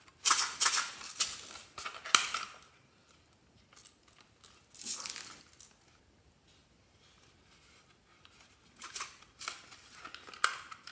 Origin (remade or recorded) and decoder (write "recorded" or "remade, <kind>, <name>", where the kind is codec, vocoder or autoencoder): recorded